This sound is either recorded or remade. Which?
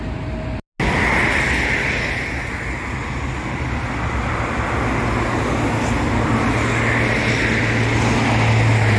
recorded